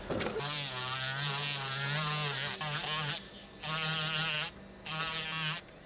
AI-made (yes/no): no